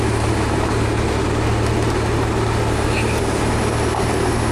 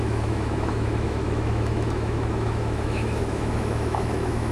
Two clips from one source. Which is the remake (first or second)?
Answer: second